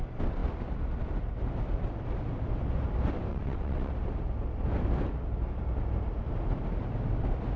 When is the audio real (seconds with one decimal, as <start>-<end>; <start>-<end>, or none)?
0.0-3.3; 3.9-7.6